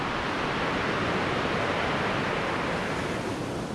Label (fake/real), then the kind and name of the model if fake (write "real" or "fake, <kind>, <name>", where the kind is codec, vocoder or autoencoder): real